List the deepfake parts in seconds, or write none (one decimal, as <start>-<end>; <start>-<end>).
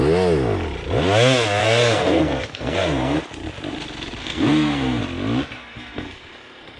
1.6-3.2; 4.2-5.0; 5.6-6.8